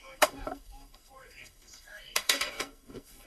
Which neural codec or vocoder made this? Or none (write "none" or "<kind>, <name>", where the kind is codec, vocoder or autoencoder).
codec, SNAC